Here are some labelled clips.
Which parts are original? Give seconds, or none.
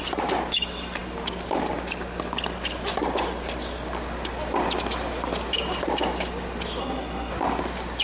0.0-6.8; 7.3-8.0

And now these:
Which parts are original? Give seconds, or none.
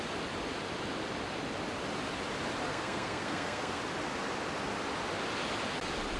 0.0-2.7; 3.8-6.2